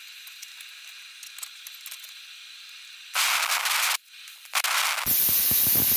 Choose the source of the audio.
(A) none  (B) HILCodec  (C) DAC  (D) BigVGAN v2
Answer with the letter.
A